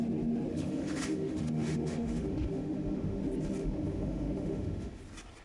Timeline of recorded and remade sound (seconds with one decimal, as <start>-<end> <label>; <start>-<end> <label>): 0.0-0.5 recorded; 0.5-3.2 remade; 3.2-3.6 recorded; 3.6-5.0 remade; 5.0-5.4 recorded